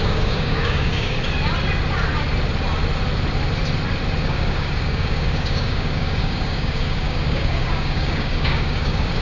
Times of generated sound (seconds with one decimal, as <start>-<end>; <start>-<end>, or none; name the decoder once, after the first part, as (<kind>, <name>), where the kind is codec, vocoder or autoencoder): 0.0-1.2 (codec, DAC); 4.2-9.2